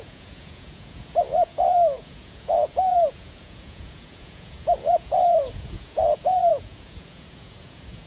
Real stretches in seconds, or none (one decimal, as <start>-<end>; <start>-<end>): none